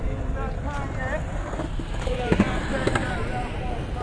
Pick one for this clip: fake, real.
real